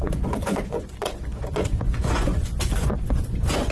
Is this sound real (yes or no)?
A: no